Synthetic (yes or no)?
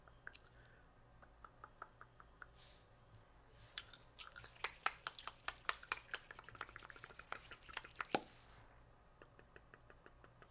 no